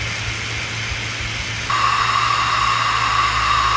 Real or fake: real